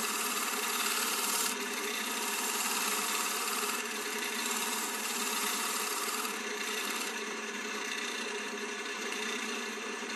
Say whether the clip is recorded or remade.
remade